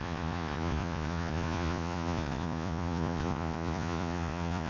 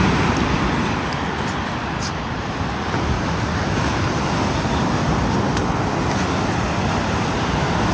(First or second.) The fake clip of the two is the first